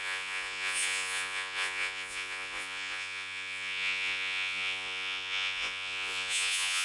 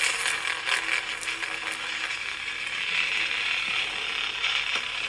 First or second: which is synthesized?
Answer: first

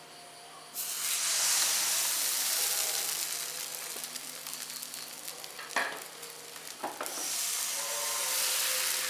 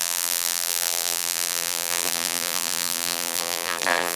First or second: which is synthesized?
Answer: second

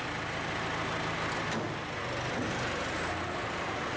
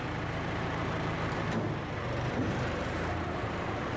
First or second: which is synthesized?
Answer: second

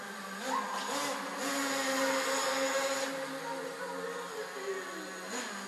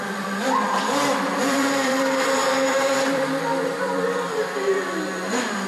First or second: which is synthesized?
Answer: second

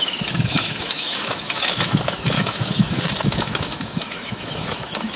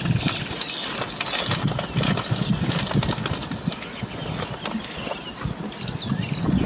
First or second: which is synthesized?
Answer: first